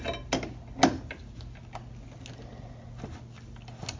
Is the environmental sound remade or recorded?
recorded